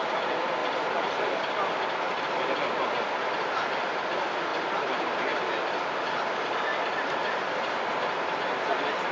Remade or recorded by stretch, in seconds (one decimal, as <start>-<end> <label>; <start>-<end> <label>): 0.0-0.6 recorded; 0.6-2.1 remade; 2.1-4.5 recorded; 4.5-5.2 remade; 5.2-9.1 recorded

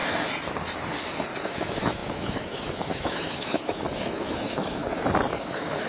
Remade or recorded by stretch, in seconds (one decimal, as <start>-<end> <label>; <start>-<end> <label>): 0.0-1.4 recorded; 1.4-4.8 remade; 4.8-5.4 recorded; 5.4-5.9 remade

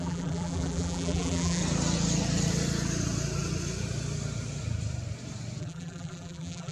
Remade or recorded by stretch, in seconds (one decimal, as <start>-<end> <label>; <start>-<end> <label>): 0.0-1.6 remade; 1.6-5.6 recorded; 5.6-6.7 remade